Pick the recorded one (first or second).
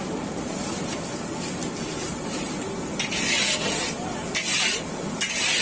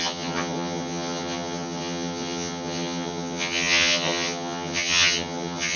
first